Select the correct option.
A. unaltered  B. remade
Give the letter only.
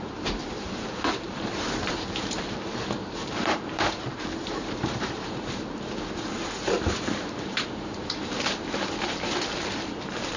B